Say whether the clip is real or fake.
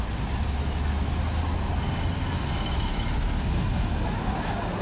real